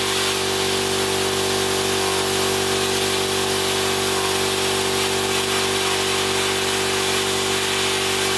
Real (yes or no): yes